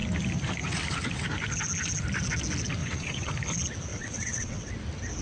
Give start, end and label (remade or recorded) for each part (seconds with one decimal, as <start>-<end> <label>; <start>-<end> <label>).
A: 0.0-2.8 recorded; 2.8-3.3 remade; 3.3-3.9 recorded; 3.9-4.7 remade; 4.7-5.2 recorded